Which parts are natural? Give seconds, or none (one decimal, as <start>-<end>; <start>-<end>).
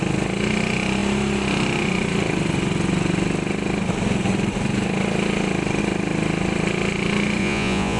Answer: 0.0-7.4